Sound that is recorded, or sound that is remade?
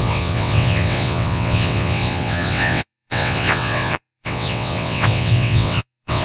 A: remade